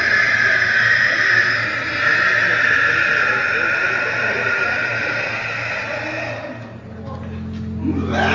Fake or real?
real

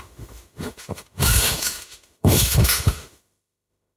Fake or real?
fake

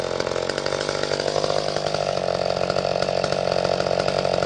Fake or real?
real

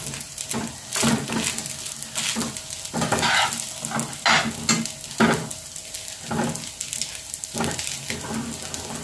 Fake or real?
real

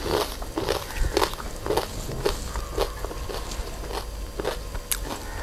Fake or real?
real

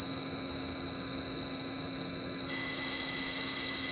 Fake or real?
fake